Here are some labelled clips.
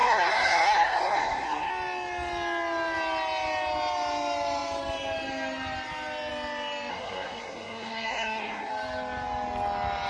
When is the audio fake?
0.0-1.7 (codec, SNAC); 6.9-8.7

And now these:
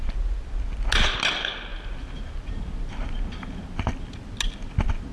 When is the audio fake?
none

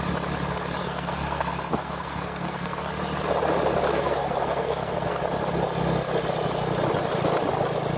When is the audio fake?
0.8-2.9 (codec, SNAC); 3.9-5.2

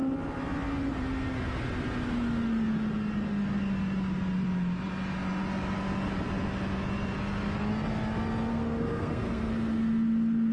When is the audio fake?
8.5-9.5 (codec, SNAC)

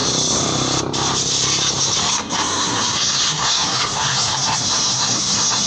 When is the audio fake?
2.1-5.7 (codec, SNAC)